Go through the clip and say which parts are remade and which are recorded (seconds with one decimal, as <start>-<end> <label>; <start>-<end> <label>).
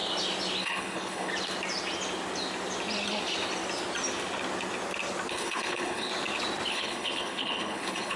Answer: 0.0-0.6 recorded; 0.6-1.3 remade; 1.3-5.3 recorded; 5.3-6.1 remade; 6.1-6.7 recorded; 6.7-8.2 remade